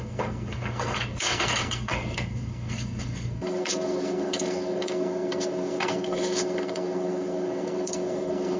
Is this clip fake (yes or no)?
yes